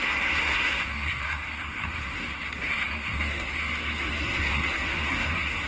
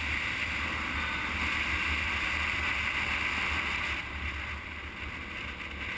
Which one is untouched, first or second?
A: second